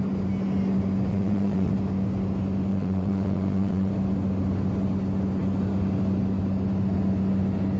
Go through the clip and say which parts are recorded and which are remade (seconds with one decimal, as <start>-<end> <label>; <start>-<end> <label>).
0.0-1.1 recorded; 1.1-1.7 remade; 1.7-2.7 recorded; 2.7-3.9 remade; 3.9-7.8 recorded